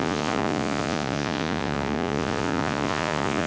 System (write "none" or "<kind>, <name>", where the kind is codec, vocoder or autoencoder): vocoder, Vocos